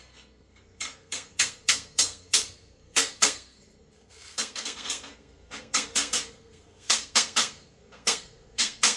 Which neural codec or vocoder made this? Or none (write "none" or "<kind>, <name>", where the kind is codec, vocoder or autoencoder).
codec, SNAC